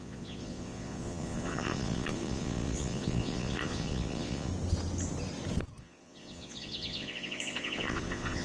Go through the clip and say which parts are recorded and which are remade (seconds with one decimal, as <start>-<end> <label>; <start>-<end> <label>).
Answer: 0.0-4.5 remade; 4.5-5.8 recorded; 5.8-8.4 remade